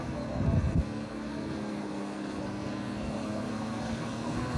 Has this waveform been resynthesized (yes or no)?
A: yes